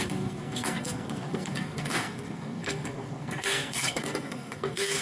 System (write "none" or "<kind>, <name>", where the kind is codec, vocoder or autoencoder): codec, SNAC